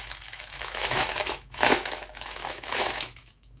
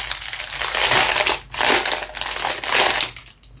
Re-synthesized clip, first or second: first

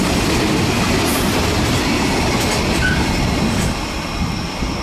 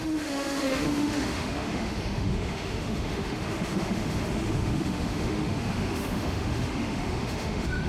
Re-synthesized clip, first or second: second